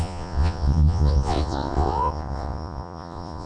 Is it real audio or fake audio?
fake